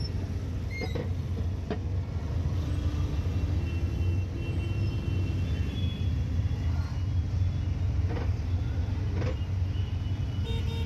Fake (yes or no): no